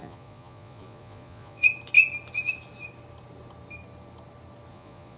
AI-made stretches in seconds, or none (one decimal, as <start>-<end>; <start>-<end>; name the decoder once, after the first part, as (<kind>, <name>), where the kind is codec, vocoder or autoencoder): 0.0-1.6 (vocoder, Vocos); 4.7-5.2

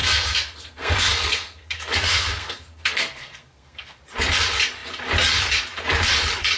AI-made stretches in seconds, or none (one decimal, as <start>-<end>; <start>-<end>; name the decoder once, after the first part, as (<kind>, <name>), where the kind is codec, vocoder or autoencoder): 0.0-4.0 (codec, SNAC)

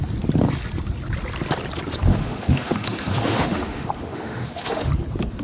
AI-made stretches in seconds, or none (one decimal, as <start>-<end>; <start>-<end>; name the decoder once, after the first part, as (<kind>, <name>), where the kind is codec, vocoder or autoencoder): 2.1-4.9 (autoencoder, DAC-VAE)

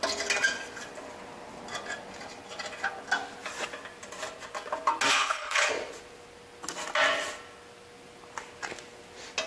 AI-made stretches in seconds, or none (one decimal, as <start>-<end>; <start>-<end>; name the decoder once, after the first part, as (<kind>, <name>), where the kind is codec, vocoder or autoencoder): 5.1-5.7 (codec, HILCodec)

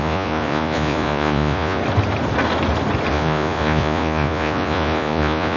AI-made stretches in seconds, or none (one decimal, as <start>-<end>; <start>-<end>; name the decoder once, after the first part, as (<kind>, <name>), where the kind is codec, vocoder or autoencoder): 0.0-1.8 (vocoder, Vocos); 3.1-5.6

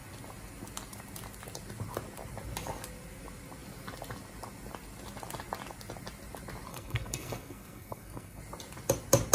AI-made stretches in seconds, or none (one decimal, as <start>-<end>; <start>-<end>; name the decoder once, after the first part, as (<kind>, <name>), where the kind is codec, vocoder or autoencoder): 6.7-8.4 (codec, SNAC)

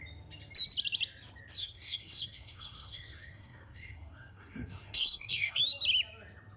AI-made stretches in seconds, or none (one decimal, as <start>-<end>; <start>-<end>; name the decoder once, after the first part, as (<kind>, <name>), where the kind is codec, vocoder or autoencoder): 1.6-5.6 (codec, SNAC)